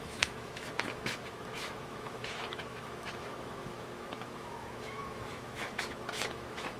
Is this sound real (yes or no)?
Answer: no